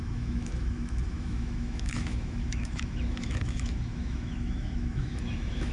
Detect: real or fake fake